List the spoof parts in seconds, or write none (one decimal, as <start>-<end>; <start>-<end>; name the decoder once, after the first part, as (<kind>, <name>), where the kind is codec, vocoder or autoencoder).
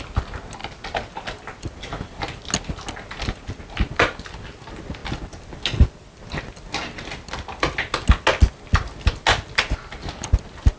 none